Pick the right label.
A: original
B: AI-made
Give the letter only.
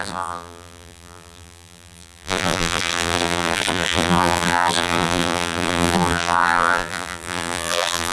B